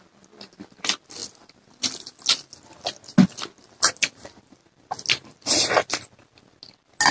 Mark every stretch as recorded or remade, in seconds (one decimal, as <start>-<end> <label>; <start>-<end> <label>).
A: 0.0-7.1 recorded